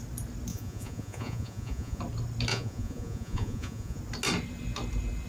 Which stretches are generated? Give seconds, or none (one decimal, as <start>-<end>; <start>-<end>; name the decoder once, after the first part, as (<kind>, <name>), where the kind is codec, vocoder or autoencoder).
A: 0.5-2.0 (vocoder, Vocos); 2.5-4.0